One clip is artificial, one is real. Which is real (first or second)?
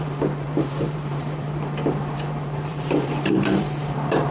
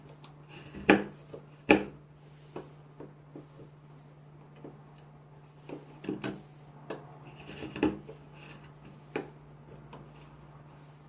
second